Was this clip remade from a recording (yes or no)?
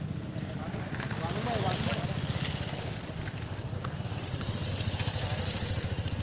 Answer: no